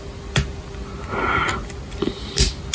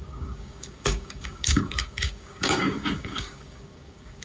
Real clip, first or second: first